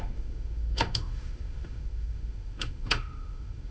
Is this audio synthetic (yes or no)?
yes